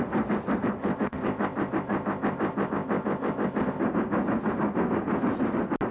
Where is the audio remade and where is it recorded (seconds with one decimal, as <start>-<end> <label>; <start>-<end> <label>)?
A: 0.0-0.8 recorded; 0.8-3.8 remade; 3.8-5.9 recorded

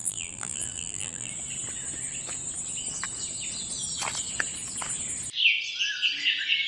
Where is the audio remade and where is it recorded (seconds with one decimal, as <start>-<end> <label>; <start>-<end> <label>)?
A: 0.0-1.3 remade; 1.3-6.7 recorded

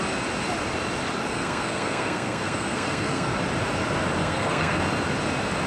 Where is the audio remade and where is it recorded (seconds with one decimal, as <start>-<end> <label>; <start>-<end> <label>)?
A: 0.0-1.2 recorded; 1.2-3.3 remade; 3.3-4.2 recorded; 4.2-4.8 remade; 4.8-5.7 recorded